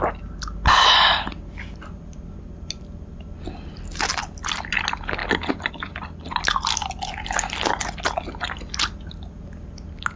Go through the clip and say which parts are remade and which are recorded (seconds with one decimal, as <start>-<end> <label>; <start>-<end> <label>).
0.0-10.2 recorded